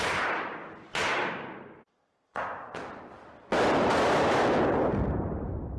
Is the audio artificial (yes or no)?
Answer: yes